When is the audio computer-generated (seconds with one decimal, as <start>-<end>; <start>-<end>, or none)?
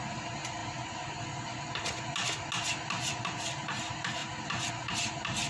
0.6-1.2; 4.2-4.7